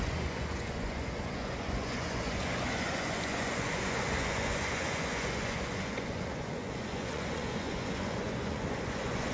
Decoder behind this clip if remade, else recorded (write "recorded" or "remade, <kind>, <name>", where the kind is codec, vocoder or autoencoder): remade, vocoder, Vocos